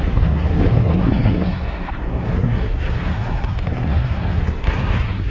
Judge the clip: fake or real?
fake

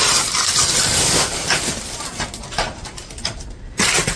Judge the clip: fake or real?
fake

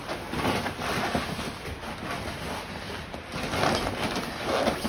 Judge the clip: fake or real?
real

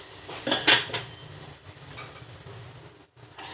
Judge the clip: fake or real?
real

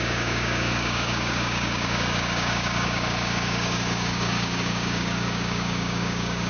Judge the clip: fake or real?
fake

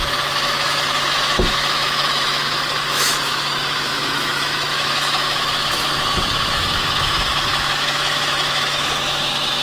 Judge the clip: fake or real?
fake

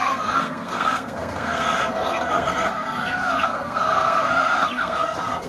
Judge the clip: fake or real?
fake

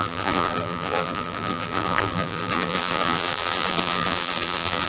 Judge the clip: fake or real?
fake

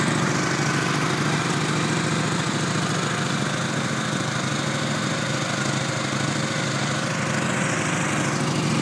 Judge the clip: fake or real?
real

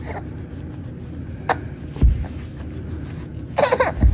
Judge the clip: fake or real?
real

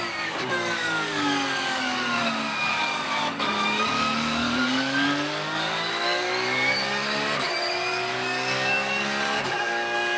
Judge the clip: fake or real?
fake